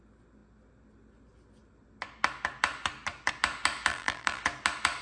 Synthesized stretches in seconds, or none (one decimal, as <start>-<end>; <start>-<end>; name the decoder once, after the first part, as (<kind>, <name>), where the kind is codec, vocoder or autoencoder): 3.9-4.4 (vocoder, BigVGAN v2)